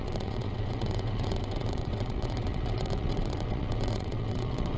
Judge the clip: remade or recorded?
remade